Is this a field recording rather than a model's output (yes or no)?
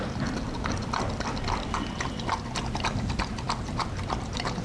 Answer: yes